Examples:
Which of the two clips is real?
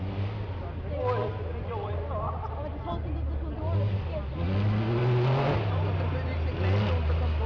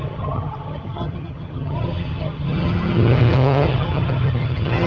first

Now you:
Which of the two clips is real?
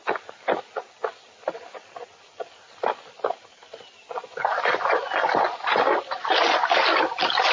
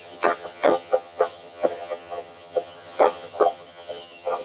first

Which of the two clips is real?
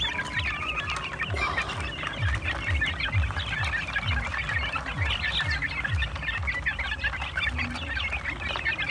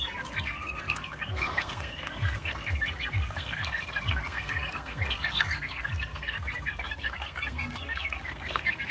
first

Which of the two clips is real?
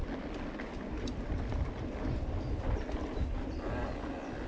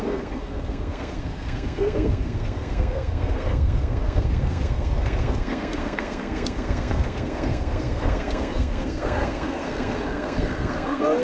first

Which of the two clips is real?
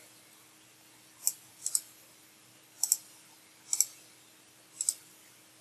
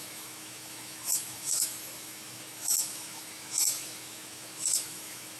first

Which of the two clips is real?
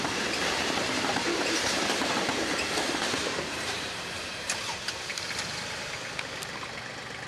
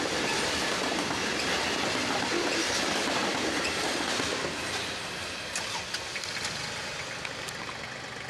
second